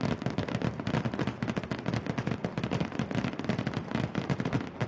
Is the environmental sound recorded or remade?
recorded